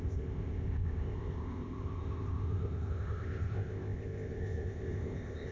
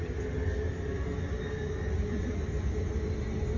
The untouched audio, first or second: second